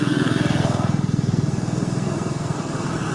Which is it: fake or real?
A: fake